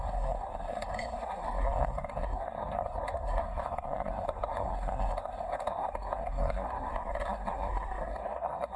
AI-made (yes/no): yes